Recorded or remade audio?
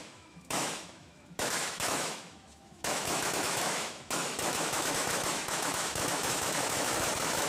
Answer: remade